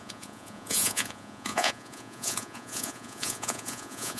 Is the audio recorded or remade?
remade